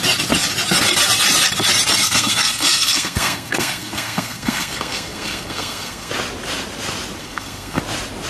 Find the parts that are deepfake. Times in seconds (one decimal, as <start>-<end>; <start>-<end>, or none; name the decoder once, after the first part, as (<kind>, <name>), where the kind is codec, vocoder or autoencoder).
2.0-6.1 (codec, SNAC); 7.2-7.8